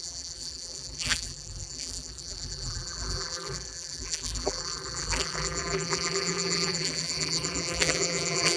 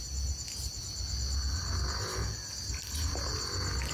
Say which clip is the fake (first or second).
first